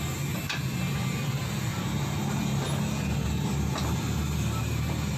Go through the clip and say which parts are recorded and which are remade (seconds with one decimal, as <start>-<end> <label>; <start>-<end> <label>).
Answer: 0.0-5.2 recorded